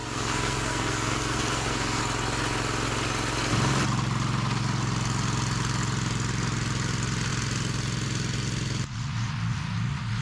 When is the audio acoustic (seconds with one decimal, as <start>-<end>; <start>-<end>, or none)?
2.0-10.2